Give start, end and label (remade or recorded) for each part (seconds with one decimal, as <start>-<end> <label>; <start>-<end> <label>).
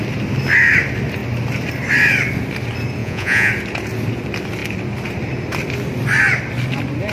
0.0-3.0 recorded; 3.0-3.5 remade; 3.5-7.1 recorded